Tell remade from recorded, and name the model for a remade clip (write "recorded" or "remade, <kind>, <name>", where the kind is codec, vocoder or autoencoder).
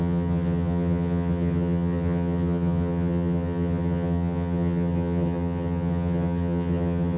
remade, vocoder, HiFi-GAN